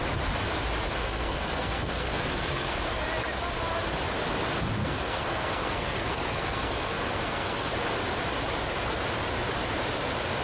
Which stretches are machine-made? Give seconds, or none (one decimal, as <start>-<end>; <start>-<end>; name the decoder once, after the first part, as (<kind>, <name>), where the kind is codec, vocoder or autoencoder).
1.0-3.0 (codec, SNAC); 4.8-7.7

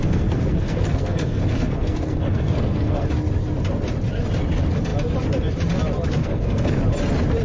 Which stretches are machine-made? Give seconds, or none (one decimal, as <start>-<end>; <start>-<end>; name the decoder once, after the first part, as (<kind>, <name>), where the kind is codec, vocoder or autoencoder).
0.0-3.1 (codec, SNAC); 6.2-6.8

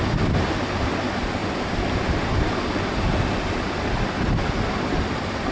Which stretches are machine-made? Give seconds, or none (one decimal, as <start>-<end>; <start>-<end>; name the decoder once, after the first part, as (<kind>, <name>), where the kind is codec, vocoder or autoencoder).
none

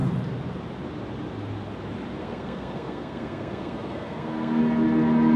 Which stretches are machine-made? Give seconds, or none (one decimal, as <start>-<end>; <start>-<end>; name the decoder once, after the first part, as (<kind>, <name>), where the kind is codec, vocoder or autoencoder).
2.2-4.6 (codec, SNAC)